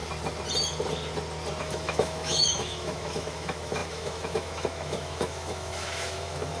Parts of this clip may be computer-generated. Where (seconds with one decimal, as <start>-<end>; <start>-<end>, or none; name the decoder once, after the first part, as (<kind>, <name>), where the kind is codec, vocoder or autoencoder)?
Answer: 1.6-6.6 (autoencoder, DAC-VAE)